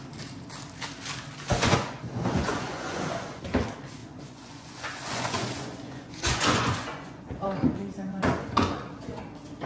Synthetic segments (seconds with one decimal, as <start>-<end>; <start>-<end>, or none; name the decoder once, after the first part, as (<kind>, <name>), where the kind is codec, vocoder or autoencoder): 1.5-3.4 (vocoder, Vocos); 4.0-9.2